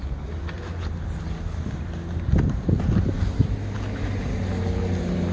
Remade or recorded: recorded